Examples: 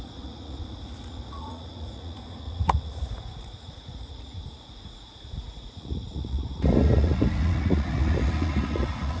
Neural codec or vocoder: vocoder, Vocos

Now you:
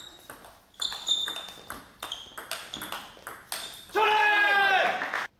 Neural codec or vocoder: none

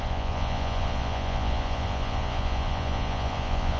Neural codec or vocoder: vocoder, Vocos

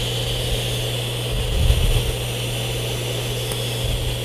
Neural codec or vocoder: none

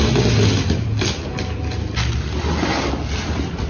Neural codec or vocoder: none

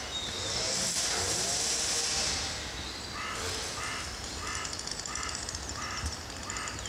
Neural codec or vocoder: none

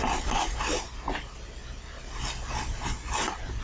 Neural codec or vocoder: none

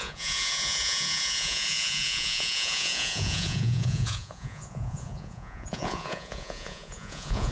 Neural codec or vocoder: vocoder, Vocos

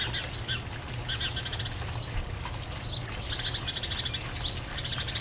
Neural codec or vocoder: none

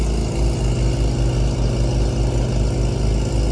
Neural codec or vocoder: none